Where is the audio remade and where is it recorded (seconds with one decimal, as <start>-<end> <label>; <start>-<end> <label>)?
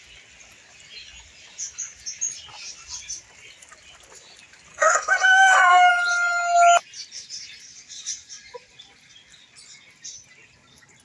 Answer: 0.0-4.7 recorded; 4.7-5.9 remade; 5.9-11.0 recorded